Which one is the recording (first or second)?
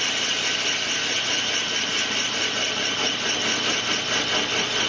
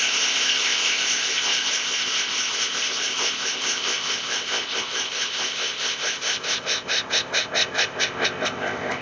first